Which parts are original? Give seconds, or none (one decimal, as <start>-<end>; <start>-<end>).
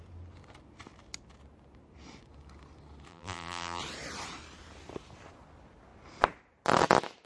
0.0-3.1; 3.8-7.3